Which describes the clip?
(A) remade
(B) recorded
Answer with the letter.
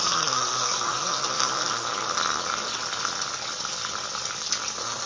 B